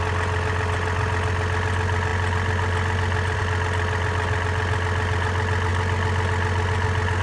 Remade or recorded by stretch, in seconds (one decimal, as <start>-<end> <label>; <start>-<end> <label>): 0.0-7.2 recorded